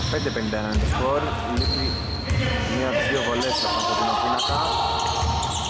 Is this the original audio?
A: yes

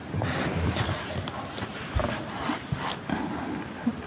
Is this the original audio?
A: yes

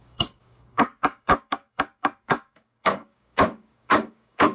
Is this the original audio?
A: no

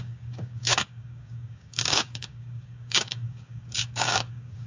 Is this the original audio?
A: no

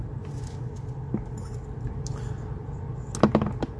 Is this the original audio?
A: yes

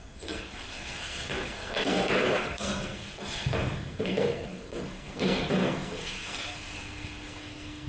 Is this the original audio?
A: no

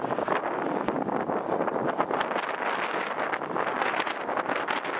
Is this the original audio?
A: yes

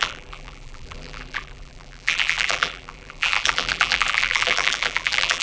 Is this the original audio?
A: no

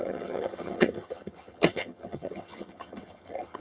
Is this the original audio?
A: no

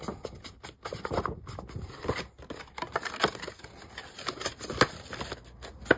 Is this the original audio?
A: yes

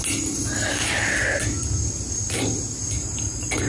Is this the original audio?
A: yes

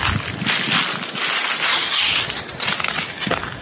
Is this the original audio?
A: yes